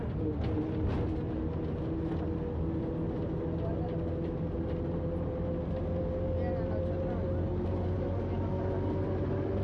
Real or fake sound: real